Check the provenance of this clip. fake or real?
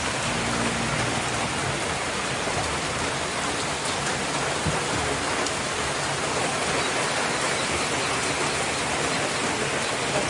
real